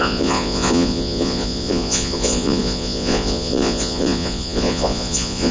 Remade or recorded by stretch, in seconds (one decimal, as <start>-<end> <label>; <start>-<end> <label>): 0.0-5.5 remade